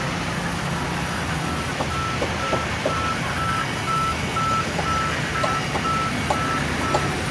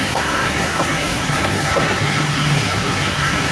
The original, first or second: first